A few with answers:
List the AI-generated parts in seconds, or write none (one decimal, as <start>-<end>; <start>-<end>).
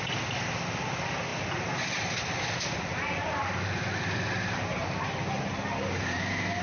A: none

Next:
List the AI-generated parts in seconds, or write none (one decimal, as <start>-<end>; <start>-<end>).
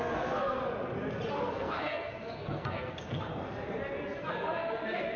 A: 0.0-0.6; 1.3-3.3; 4.2-5.2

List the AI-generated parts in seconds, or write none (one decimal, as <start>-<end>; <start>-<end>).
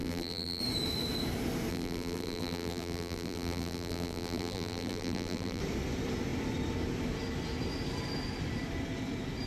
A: 0.0-0.6; 1.7-5.6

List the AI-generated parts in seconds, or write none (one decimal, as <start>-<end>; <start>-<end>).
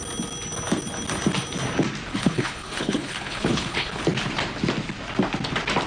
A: 2.1-4.0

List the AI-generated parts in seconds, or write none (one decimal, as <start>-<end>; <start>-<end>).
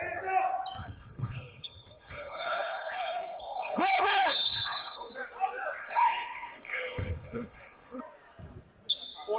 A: 0.8-5.1; 5.8-8.0